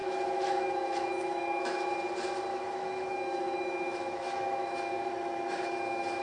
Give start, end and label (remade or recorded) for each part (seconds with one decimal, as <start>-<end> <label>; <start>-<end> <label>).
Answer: 0.0-1.9 remade; 1.9-2.5 recorded; 2.5-6.2 remade